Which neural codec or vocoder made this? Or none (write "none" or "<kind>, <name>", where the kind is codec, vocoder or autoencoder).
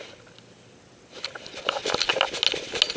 none